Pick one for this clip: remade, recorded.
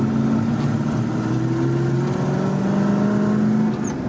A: recorded